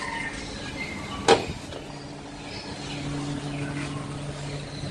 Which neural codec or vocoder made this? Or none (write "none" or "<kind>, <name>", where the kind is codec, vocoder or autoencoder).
none